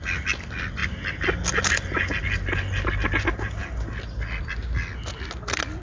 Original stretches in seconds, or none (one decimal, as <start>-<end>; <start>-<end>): 0.0-5.8